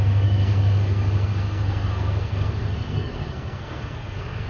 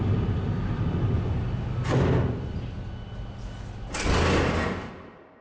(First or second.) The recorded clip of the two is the second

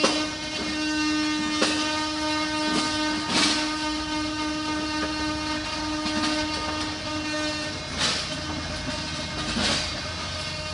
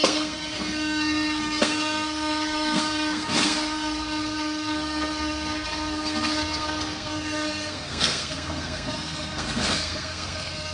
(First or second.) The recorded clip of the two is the first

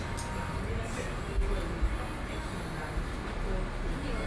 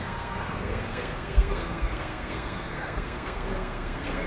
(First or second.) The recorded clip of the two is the first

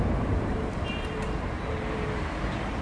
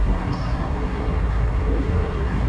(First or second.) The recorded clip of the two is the first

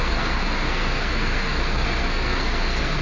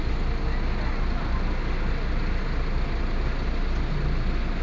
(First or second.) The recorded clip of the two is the second